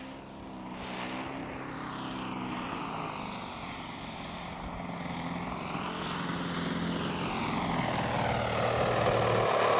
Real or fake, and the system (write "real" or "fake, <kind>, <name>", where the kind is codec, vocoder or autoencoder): real